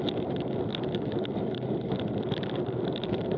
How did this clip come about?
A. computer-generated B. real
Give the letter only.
B